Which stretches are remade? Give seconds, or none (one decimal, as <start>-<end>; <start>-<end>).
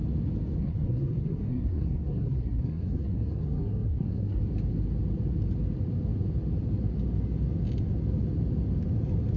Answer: 0.6-4.4